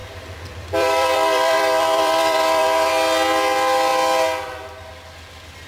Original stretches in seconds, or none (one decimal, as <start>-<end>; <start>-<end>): 2.9-5.7